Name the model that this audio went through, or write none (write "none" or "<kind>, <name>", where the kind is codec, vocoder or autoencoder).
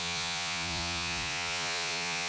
vocoder, Vocos